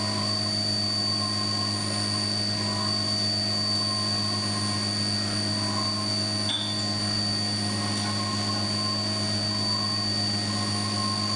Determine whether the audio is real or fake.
real